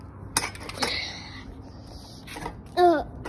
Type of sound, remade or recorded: recorded